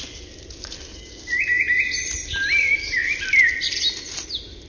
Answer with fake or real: real